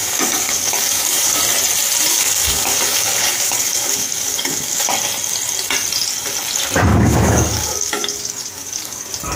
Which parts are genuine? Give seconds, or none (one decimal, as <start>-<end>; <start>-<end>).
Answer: 1.4-2.1; 4.9-6.9; 9.0-9.4